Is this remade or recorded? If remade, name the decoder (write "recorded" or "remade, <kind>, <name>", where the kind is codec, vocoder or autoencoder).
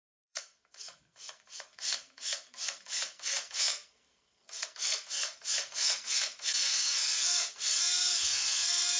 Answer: remade, codec, SNAC